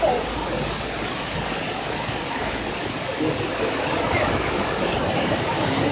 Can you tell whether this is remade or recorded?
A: remade